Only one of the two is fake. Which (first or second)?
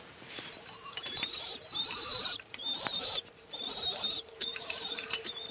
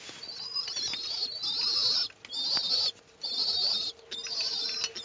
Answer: first